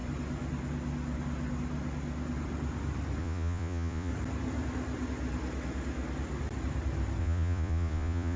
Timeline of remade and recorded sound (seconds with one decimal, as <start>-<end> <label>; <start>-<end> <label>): 0.0-3.2 recorded; 3.2-4.1 remade; 4.1-7.2 recorded; 7.2-8.4 remade

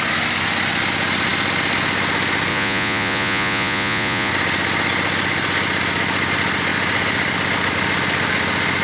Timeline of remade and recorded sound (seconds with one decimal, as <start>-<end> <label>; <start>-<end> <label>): 0.0-2.5 recorded; 2.5-4.3 remade; 4.3-8.8 recorded